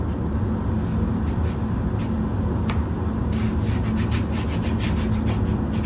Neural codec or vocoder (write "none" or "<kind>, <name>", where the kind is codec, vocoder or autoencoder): none